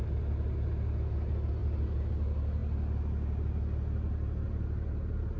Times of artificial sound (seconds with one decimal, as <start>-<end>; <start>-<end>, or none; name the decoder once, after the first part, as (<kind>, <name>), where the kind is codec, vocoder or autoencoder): none